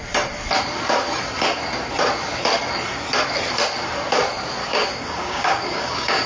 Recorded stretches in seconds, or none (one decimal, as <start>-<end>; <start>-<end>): 0.0-4.6